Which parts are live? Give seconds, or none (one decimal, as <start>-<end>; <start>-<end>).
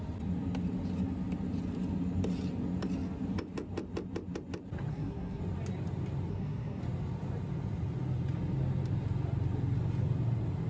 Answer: 0.0-4.9; 5.4-6.3; 6.8-10.7